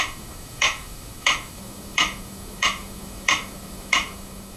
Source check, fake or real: fake